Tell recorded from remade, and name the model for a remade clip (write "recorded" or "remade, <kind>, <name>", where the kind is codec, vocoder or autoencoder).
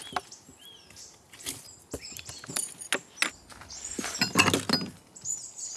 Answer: recorded